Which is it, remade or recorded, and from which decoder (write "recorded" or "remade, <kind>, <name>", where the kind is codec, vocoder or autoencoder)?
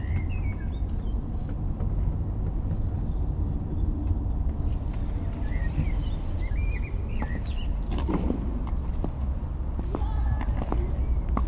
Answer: recorded